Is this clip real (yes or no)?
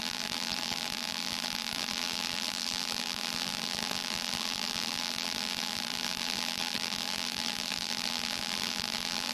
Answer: no